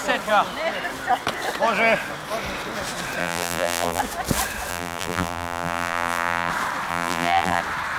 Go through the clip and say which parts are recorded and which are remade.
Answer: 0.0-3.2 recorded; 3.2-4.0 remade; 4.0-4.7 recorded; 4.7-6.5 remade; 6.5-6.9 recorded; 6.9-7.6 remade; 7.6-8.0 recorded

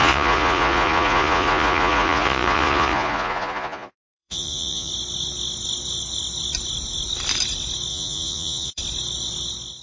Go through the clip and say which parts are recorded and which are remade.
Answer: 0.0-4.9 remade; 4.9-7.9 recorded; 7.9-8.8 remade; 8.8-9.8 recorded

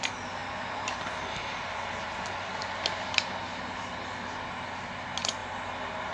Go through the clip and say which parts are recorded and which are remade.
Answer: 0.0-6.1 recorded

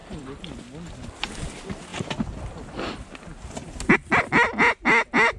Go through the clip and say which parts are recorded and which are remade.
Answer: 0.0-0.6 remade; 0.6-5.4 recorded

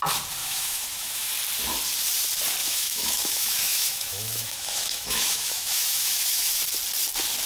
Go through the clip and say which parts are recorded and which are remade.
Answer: 0.0-0.4 recorded; 0.4-1.3 remade; 1.3-2.6 recorded; 2.6-6.6 remade; 6.6-7.5 recorded

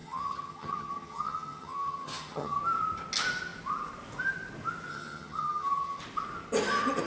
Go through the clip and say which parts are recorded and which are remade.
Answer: 0.0-2.6 remade; 2.6-4.9 recorded; 4.9-6.0 remade; 6.0-7.1 recorded

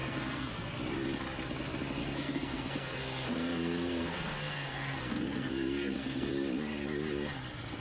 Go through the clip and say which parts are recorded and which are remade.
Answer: 0.0-0.7 remade; 0.7-2.0 recorded; 2.0-6.3 remade; 6.3-7.8 recorded

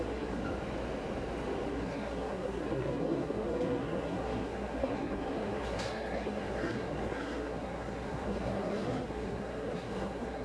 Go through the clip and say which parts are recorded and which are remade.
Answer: 0.0-0.4 remade; 0.4-1.7 recorded; 1.7-10.4 remade